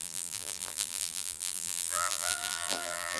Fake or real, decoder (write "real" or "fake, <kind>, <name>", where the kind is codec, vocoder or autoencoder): fake, vocoder, BigVGAN v2